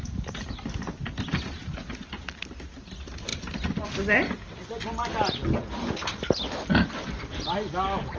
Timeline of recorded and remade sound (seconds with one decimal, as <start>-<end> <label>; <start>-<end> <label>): 0.0-8.2 recorded